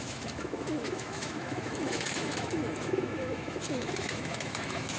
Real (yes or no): no